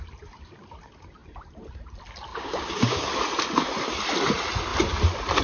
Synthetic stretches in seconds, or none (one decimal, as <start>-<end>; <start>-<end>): 2.3-3.1